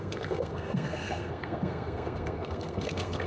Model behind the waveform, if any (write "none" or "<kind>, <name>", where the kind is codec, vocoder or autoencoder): codec, SNAC